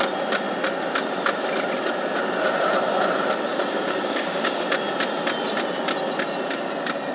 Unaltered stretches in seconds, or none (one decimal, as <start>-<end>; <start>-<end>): 0.0-3.5; 4.6-7.1